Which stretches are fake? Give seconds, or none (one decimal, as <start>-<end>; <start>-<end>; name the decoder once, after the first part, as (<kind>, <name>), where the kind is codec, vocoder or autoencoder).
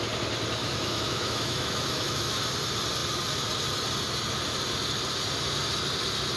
0.6-2.4 (autoencoder, DAC-VAE)